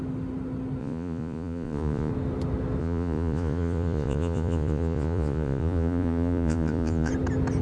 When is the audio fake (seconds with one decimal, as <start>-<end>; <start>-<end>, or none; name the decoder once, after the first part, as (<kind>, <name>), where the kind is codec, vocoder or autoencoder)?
0.8-2.1 (vocoder, Vocos); 2.8-7.1